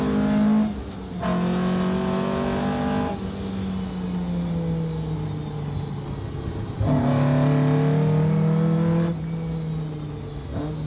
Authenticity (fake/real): real